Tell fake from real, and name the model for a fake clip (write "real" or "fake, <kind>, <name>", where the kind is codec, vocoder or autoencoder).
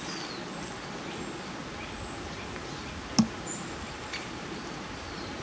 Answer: real